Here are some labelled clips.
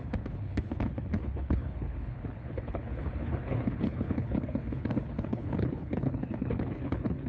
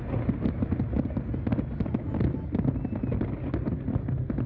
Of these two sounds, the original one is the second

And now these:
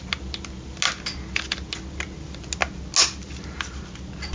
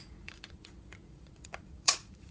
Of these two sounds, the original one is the first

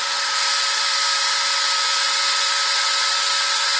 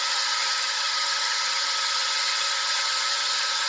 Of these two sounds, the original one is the first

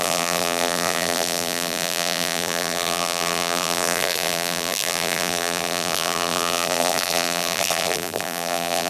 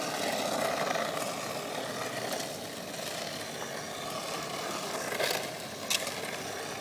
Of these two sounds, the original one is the second